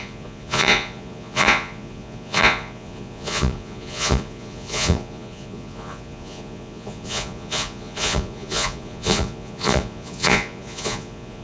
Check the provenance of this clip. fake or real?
fake